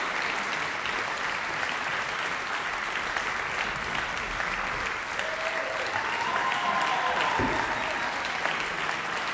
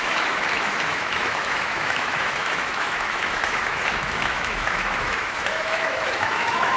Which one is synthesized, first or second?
second